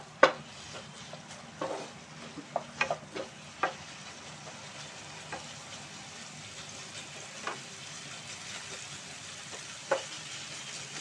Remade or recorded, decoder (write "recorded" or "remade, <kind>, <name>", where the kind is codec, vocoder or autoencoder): recorded